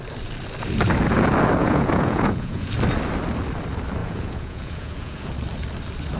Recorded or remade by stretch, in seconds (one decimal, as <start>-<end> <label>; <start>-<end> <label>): 0.0-1.6 recorded; 1.6-2.7 remade; 2.7-4.0 recorded; 4.0-5.3 remade; 5.3-6.2 recorded